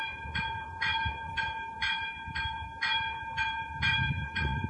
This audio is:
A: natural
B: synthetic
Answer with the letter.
B